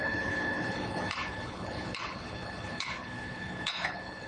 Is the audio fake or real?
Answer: fake